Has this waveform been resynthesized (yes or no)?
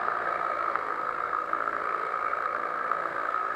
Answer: yes